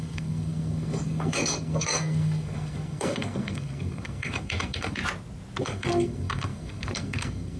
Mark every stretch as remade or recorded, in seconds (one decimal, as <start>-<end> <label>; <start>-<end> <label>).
0.0-5.0 remade; 5.0-5.6 recorded; 5.6-7.6 remade